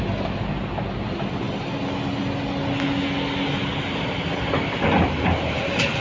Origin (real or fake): real